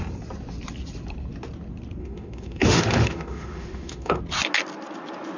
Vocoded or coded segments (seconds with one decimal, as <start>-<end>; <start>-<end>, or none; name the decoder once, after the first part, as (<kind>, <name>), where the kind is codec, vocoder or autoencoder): 2.0-4.2 (autoencoder, DAC-VAE)